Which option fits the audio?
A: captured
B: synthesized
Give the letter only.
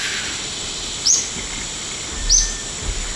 A